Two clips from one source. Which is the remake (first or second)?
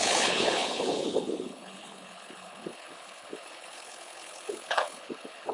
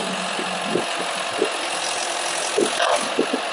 first